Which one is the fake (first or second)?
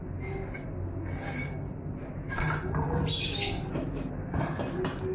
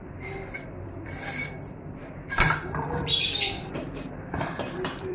second